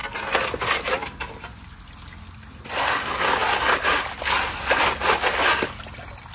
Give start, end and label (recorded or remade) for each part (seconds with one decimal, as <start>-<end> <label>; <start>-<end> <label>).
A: 0.0-6.3 recorded